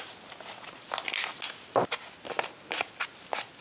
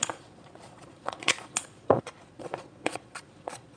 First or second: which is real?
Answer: first